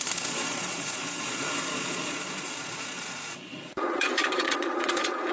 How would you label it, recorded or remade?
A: remade